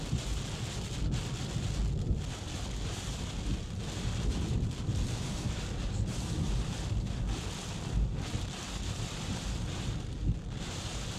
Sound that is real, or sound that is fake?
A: real